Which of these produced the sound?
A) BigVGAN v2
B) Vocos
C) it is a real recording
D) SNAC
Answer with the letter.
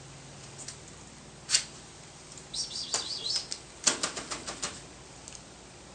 C